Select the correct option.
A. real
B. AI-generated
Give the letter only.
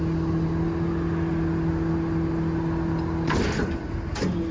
A